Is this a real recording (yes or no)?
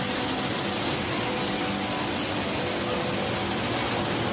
yes